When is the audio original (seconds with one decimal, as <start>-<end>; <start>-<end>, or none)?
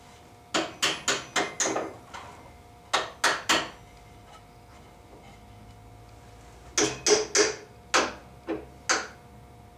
0.0-9.8